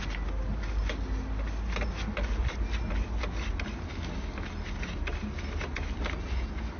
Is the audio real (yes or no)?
yes